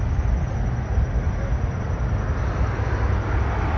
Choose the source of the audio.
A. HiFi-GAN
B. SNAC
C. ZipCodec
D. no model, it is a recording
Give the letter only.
D